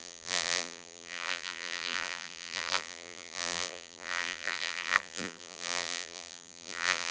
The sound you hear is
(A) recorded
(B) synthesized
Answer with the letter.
B